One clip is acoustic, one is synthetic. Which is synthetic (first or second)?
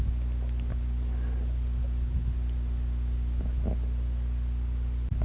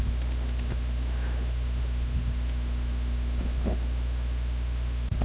second